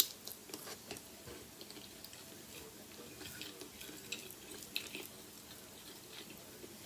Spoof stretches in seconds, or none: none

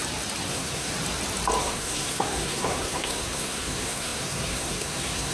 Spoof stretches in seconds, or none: 0.5-0.9 (codec, SNAC); 1.6-5.3

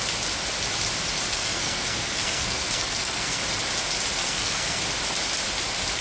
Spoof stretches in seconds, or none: 1.3-3.4 (codec, SNAC); 4.2-4.8

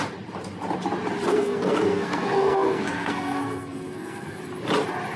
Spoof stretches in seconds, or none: 1.3-4.4 (codec, SNAC)

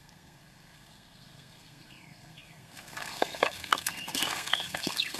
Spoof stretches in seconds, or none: 0.0-5.2 (codec, SNAC)

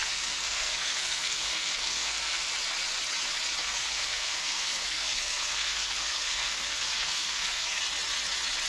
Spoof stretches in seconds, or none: 0.0-2.5 (codec, SNAC); 3.6-7.8